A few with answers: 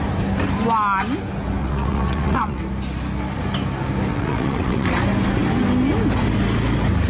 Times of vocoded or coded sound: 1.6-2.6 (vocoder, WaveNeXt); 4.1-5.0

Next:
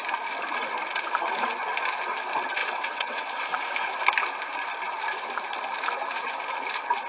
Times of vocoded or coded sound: 2.6-3.4 (vocoder, WaveNeXt)

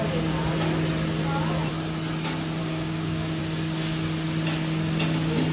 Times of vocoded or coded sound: 2.6-3.4 (codec, DAC)

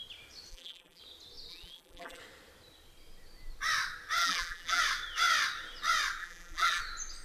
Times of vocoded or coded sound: 0.5-1.0 (vocoder, BigVGAN v2); 1.5-2.2; 4.2-4.8; 6.2-6.8

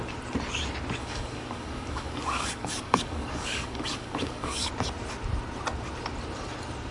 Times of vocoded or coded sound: 1.0-4.7 (codec, DAC)

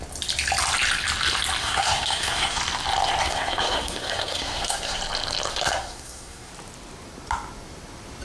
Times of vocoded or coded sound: 1.6-2.6 (codec, SNAC); 3.2-5.0; 5.5-6.5

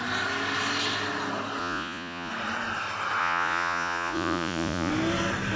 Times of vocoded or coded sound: 1.6-2.3 (vocoder, Vocos); 3.2-4.9